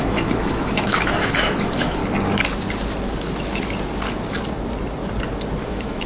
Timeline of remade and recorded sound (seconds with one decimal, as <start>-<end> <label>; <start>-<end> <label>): 0.0-2.0 remade; 2.0-5.6 recorded; 5.6-6.1 remade